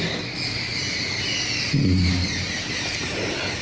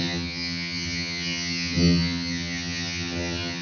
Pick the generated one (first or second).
second